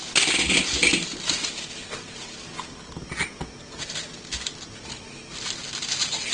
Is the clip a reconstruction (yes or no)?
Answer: no